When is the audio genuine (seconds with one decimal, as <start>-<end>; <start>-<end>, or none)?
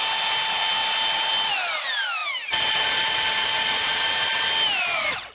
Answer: 0.0-2.2; 4.4-5.3